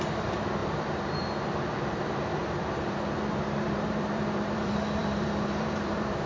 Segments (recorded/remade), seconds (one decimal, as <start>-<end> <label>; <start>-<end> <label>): 0.0-6.3 remade